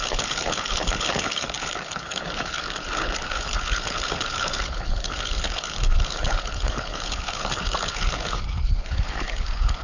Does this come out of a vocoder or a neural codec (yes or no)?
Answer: yes